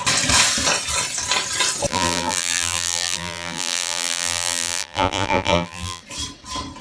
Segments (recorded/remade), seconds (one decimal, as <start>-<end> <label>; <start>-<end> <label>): 0.0-1.9 recorded; 1.9-6.0 remade; 6.0-6.8 recorded